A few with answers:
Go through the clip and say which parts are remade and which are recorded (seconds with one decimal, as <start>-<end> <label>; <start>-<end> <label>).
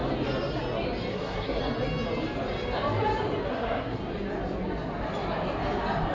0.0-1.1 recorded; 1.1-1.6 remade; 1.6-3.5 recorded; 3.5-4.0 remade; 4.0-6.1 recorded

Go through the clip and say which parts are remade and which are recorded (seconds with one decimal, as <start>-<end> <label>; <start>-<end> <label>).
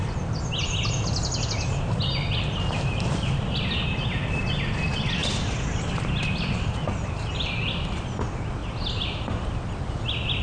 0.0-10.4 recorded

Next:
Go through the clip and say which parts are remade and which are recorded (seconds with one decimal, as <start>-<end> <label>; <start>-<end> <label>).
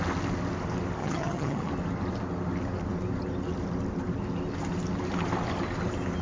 0.0-1.0 recorded; 1.0-1.7 remade; 1.7-6.2 recorded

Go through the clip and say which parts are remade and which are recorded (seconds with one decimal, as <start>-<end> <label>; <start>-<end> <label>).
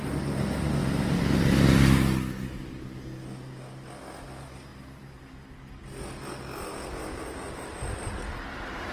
0.0-8.9 recorded